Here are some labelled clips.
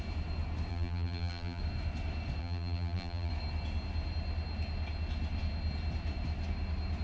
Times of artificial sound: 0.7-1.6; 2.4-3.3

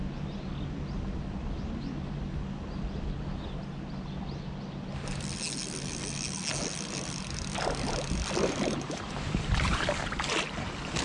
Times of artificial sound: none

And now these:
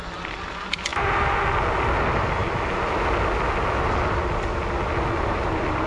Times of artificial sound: none

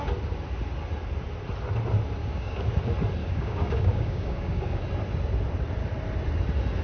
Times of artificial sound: 2.2-2.8; 3.2-4.8

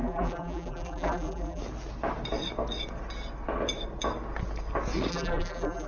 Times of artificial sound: 0.0-1.6; 5.1-5.9

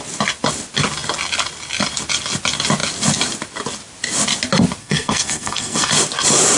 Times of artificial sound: 4.8-5.9

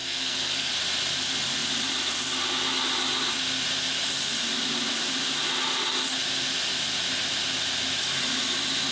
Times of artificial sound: 0.0-0.7